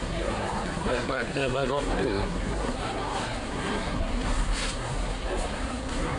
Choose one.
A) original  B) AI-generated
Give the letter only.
B